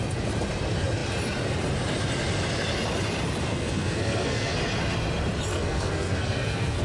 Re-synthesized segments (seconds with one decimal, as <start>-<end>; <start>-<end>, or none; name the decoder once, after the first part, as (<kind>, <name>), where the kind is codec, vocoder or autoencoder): 3.5-4.6 (codec, SNAC); 5.5-6.8